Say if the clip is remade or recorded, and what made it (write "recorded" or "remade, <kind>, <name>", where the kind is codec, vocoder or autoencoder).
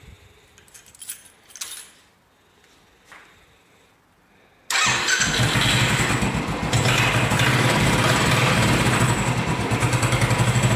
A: recorded